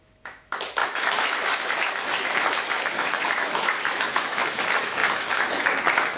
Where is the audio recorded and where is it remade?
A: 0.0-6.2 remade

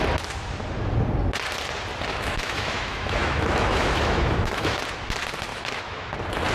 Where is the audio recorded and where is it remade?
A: 0.0-2.1 recorded; 2.1-4.8 remade; 4.8-5.5 recorded; 5.5-6.1 remade; 6.1-6.5 recorded